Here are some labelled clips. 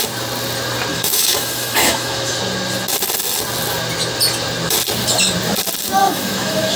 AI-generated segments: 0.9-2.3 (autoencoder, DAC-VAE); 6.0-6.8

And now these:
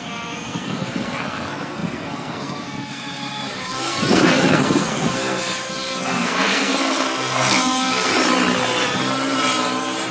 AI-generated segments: 0.0-8.1 (codec, SNAC)

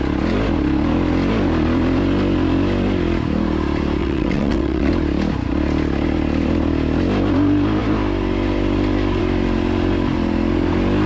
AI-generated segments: 4.0-4.9 (vocoder, WaveNeXt)

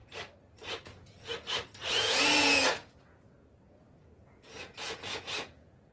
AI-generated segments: 1.9-5.9 (vocoder, Vocos)